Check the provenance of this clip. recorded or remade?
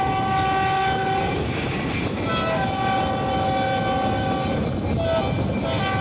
recorded